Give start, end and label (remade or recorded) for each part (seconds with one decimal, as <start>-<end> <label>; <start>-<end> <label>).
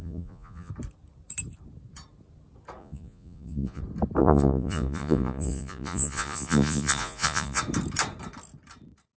0.0-0.7 remade; 0.7-2.8 recorded; 2.8-3.8 remade; 3.8-4.2 recorded; 4.2-7.6 remade; 7.6-9.2 recorded